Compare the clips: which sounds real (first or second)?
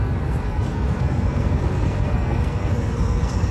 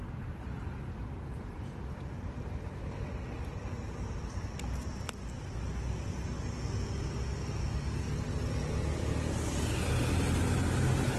second